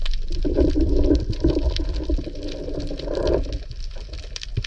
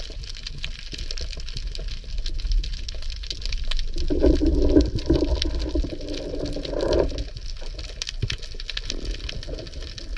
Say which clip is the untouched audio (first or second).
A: second